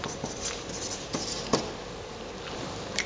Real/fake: real